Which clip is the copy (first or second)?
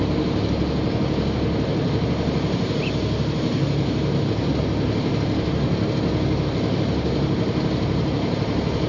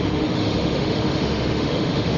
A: second